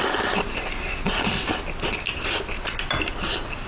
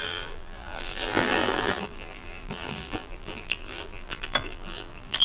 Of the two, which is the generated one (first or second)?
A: second